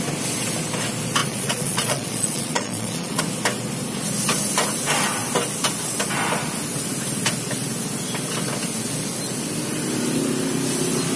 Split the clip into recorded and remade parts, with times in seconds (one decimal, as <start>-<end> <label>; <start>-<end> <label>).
0.0-1.2 recorded; 1.2-3.2 remade; 3.2-11.2 recorded